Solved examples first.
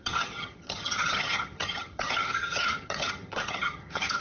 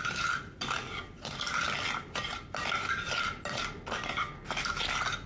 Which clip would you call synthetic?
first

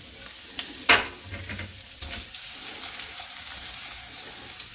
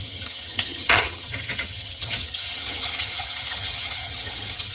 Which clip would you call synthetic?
second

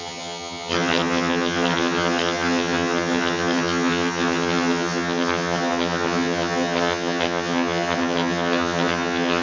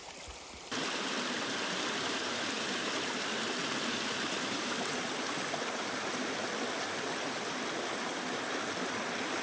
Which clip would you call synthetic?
first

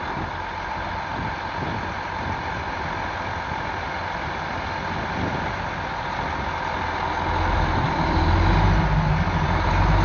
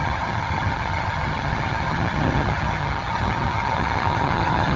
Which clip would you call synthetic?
second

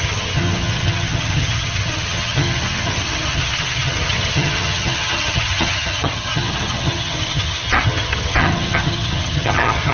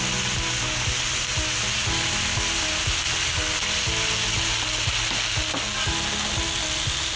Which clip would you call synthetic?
first